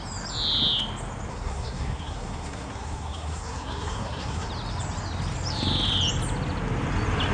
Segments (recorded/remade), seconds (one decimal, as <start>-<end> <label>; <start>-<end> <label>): 0.0-1.3 recorded; 1.3-4.5 remade; 4.5-7.3 recorded

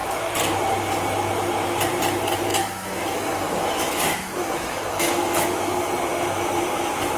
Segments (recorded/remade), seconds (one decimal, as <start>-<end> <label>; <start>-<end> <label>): 0.0-2.5 recorded; 2.5-5.9 remade; 5.9-7.2 recorded

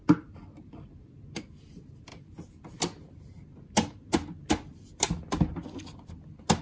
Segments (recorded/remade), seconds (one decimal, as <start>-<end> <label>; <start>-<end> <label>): 0.0-6.6 recorded

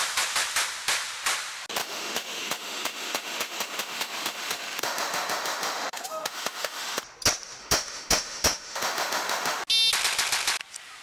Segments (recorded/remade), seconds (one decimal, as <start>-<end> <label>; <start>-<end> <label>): 0.0-1.8 recorded; 1.8-7.0 remade; 7.0-7.6 recorded; 7.6-9.6 remade; 9.6-11.0 recorded

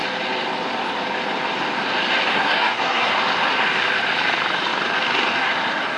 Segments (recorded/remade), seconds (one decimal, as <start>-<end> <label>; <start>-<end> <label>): 0.0-2.3 recorded; 2.3-3.1 remade; 3.1-6.0 recorded

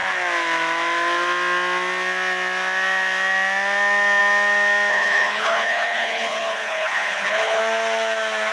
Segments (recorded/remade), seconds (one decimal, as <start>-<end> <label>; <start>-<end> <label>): 0.0-4.9 recorded; 4.9-7.6 remade; 7.6-8.5 recorded